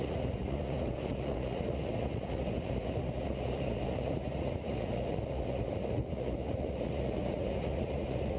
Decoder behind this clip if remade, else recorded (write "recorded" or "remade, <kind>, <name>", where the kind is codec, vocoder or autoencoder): remade, vocoder, Vocos